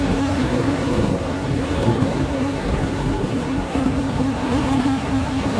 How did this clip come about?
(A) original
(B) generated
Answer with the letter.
B